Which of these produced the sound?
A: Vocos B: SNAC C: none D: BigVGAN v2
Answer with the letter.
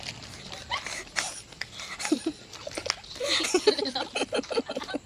C